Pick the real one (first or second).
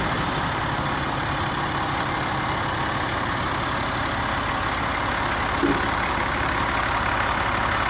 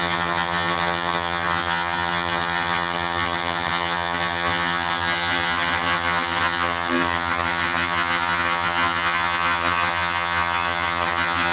first